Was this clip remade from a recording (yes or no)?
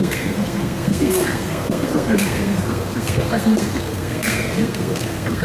yes